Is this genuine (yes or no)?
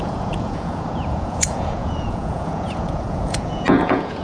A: no